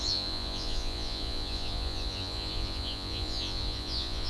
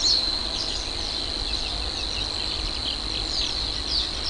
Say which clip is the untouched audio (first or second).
second